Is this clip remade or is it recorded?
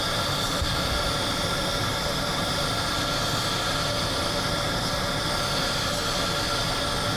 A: recorded